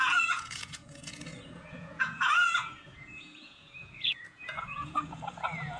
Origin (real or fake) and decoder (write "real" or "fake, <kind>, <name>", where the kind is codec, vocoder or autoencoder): fake, vocoder, Vocos